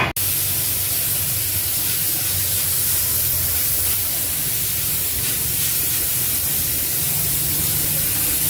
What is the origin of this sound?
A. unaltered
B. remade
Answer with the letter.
A